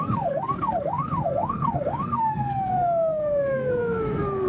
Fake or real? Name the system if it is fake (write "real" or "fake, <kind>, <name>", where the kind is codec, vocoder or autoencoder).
fake, codec, SNAC